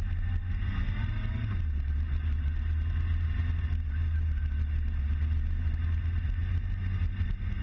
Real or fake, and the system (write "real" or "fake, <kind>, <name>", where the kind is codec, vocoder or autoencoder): real